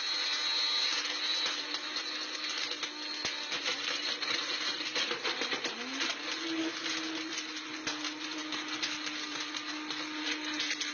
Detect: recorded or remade recorded